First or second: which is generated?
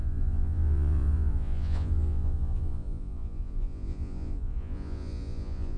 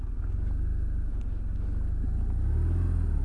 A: first